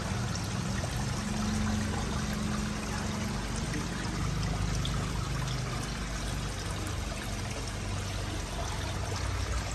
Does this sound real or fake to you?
real